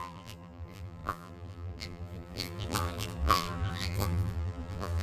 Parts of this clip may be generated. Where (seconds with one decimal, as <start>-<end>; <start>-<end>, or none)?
0.0-5.0